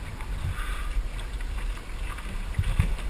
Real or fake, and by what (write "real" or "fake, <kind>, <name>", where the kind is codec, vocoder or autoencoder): real